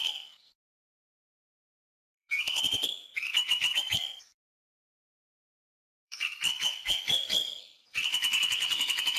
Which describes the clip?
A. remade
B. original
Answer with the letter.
A